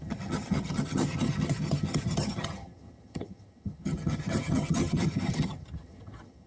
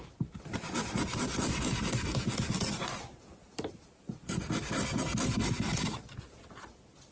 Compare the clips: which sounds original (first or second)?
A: second